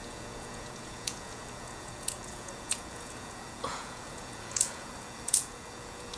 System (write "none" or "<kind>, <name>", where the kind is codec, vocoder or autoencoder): vocoder, Vocos